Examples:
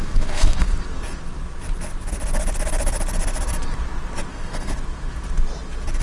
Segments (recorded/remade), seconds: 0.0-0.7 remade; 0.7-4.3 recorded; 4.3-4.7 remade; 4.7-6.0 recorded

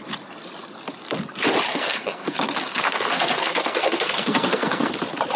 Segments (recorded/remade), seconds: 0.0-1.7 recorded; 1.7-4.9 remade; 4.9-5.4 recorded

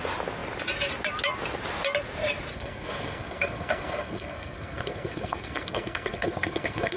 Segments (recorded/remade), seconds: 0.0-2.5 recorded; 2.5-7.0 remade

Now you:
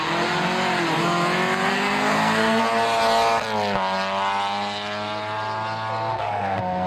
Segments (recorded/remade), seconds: 0.0-1.7 recorded; 1.7-2.6 remade; 2.6-6.1 recorded; 6.1-6.9 remade

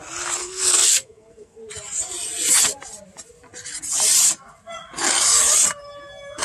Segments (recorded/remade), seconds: 0.0-0.4 recorded; 0.4-1.6 remade; 1.6-6.4 recorded

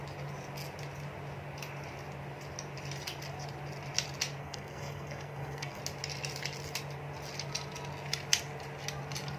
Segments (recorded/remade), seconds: 0.0-4.4 recorded; 4.4-5.8 remade; 5.8-9.4 recorded

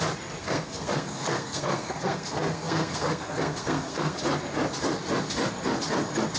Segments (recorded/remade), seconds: 0.0-0.4 recorded; 0.4-4.2 remade; 4.2-6.4 recorded